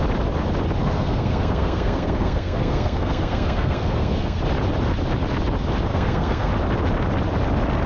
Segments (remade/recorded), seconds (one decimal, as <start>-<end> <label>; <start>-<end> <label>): 0.0-0.8 recorded; 0.8-4.4 remade; 4.4-5.9 recorded; 5.9-6.5 remade; 6.5-7.9 recorded